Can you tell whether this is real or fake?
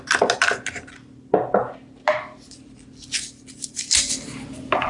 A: real